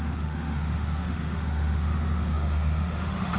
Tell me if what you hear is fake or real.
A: fake